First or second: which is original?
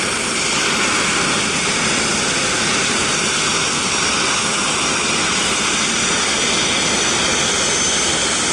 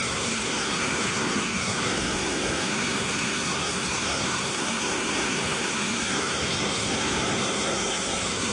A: first